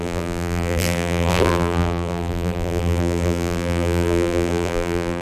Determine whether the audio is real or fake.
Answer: fake